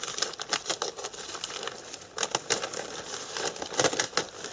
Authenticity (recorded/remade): recorded